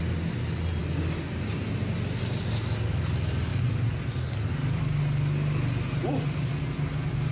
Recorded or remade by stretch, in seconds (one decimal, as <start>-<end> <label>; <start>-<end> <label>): 0.0-3.5 recorded; 3.5-4.1 remade; 4.1-7.3 recorded